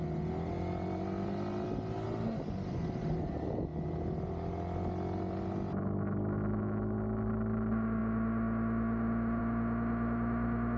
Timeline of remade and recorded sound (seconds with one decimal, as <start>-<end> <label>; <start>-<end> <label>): 0.0-10.8 recorded